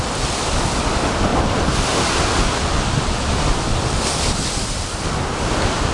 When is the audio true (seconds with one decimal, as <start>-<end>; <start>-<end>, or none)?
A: 0.0-5.9